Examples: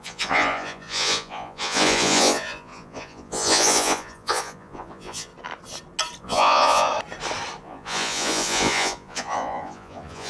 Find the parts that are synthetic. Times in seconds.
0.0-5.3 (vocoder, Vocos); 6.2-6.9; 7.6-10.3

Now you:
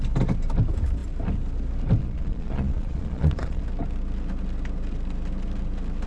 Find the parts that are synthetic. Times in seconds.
2.0-3.6 (vocoder, Vocos)

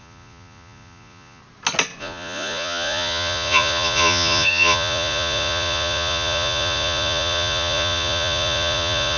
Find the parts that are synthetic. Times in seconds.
0.0-1.4 (vocoder, Vocos); 2.0-9.2

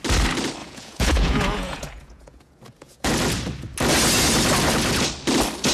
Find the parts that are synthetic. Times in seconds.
0.6-3.1 (vocoder, Vocos)

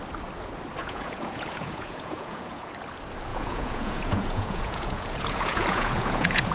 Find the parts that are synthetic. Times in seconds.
0.8-2.6 (vocoder, Vocos); 3.3-6.5